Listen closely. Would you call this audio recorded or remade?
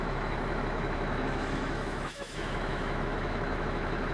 remade